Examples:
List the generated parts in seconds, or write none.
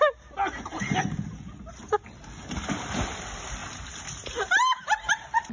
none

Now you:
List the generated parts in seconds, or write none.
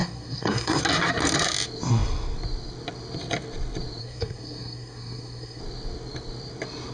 0.0-0.8 (codec, SNAC); 4.0-5.6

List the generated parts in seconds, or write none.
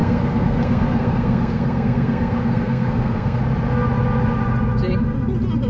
0.0-3.4 (codec, SNAC)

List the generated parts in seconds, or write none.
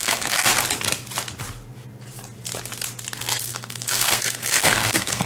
0.0-0.5 (codec, SNAC); 3.2-5.3